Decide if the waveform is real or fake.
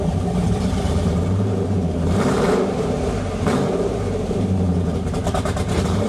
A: fake